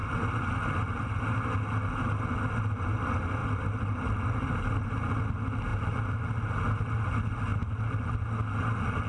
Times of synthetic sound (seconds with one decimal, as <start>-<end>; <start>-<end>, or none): 0.0-1.2; 3.4-4.6